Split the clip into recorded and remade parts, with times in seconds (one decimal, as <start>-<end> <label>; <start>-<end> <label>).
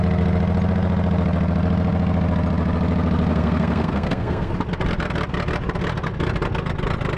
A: 0.0-3.3 recorded; 3.3-4.5 remade; 4.5-7.2 recorded